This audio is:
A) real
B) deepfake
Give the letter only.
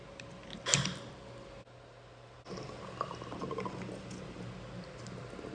A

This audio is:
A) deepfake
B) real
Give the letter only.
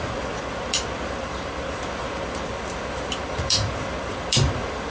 A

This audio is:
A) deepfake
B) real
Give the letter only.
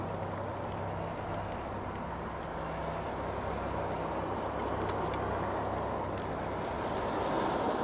B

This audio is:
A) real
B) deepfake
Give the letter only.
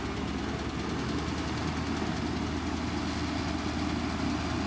A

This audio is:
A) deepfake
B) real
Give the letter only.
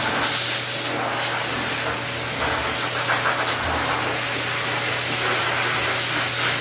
B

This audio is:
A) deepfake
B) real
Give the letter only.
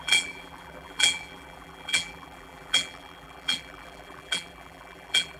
A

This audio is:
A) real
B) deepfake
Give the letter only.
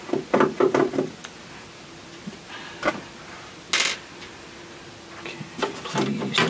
A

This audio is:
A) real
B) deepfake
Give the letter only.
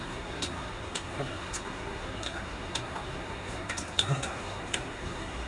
B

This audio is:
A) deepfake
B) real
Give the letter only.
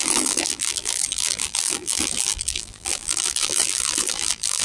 A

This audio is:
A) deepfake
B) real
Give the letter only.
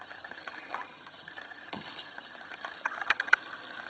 A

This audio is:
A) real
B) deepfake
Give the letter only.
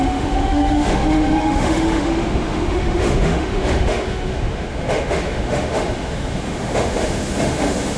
B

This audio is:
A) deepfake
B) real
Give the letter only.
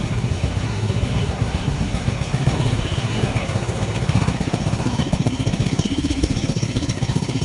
A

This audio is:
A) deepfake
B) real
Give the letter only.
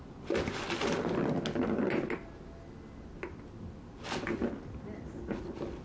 B